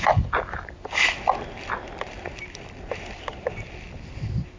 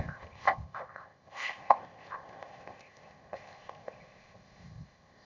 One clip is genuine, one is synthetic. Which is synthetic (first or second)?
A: second